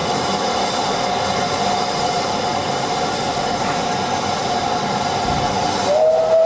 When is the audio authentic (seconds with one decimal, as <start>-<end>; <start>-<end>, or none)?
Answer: 0.0-6.5